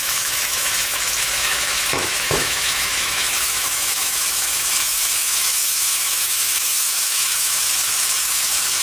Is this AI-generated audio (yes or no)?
yes